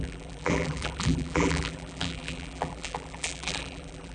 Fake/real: fake